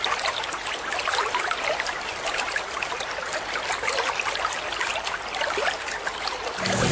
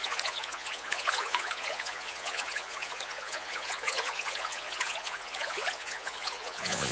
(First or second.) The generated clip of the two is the second